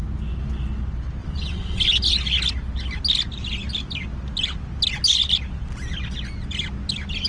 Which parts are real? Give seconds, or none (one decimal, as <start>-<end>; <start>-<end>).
0.0-1.2; 1.8-7.3